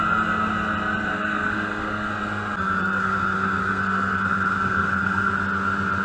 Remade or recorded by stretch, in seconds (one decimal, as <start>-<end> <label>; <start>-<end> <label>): 0.0-1.1 recorded; 1.1-2.1 remade; 2.1-2.8 recorded; 2.8-5.3 remade; 5.3-6.0 recorded